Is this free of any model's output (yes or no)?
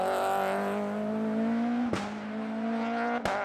yes